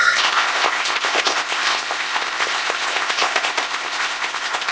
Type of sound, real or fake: fake